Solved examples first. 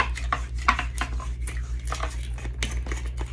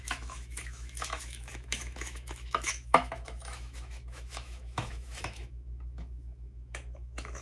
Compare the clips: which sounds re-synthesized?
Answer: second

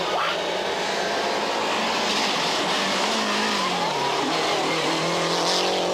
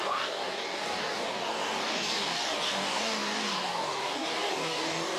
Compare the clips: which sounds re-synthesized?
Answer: second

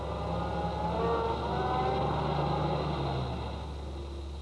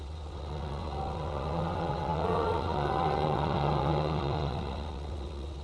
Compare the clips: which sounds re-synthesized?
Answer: second